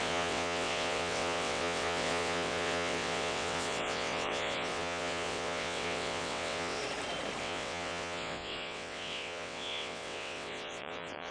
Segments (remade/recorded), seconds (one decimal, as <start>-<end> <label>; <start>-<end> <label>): 0.0-6.8 remade; 6.8-7.4 recorded; 7.4-11.3 remade